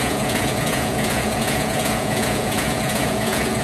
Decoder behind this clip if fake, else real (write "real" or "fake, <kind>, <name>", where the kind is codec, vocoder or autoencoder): fake, vocoder, Vocos